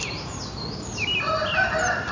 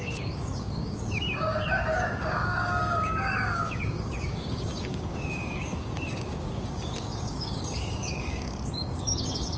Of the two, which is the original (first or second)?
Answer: first